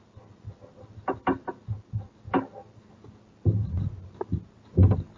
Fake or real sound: real